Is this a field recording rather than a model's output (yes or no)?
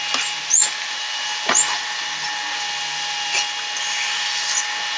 yes